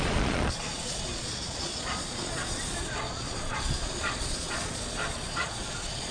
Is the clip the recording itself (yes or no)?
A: no